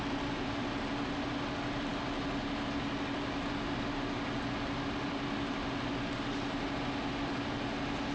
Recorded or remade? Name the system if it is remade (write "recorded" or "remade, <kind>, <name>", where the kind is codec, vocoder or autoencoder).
recorded